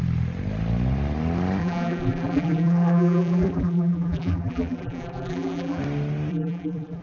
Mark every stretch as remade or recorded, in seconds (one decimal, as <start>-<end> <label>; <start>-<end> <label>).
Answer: 0.0-1.6 recorded; 1.6-5.8 remade; 5.8-6.3 recorded; 6.3-7.0 remade